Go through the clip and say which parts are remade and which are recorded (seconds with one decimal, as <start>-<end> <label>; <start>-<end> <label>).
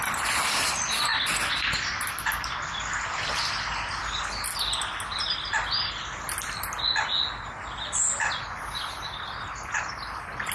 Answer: 0.0-10.5 recorded